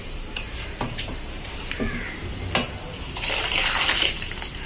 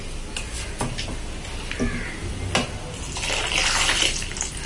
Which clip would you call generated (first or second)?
first